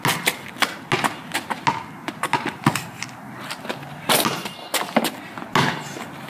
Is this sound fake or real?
real